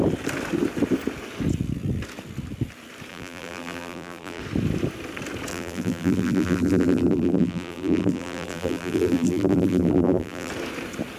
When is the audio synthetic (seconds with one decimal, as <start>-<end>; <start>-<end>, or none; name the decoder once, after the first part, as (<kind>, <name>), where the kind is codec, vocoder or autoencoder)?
3.1-4.4 (vocoder, BigVGAN v2); 5.5-10.5